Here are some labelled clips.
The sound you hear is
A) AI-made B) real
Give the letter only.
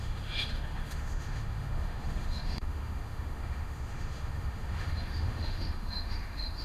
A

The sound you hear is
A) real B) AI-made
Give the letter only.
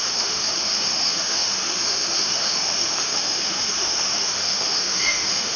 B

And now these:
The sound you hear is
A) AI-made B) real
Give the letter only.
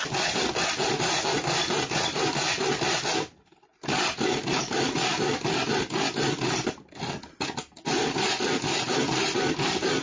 B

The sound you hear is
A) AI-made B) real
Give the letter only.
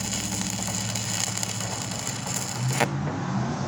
B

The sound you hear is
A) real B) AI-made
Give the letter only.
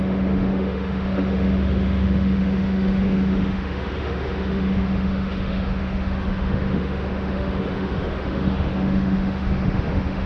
B